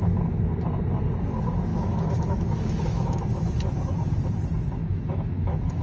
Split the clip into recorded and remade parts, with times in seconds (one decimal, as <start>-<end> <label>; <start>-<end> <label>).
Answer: 0.0-1.7 recorded; 1.7-3.5 remade; 3.5-4.8 recorded; 4.8-5.8 remade